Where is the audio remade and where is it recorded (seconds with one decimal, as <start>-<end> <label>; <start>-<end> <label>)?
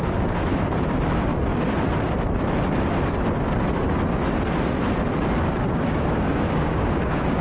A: 0.0-1.3 remade; 1.3-5.7 recorded; 5.7-7.4 remade